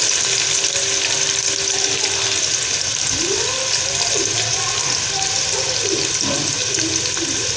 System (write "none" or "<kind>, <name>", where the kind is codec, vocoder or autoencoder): none